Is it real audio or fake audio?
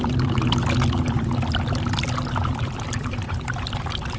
real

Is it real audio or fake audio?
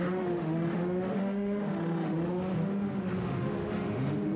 fake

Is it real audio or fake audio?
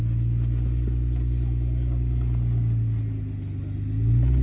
real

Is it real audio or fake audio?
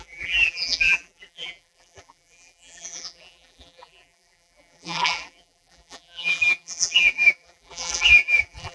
fake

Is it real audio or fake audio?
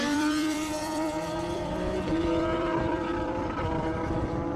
fake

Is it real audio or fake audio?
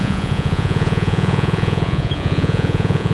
fake